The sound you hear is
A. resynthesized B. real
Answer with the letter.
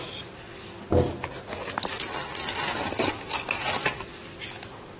B